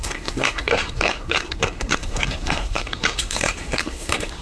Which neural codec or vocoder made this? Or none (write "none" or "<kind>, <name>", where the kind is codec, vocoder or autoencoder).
codec, SNAC